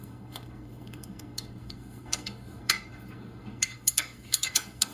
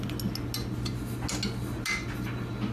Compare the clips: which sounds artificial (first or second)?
first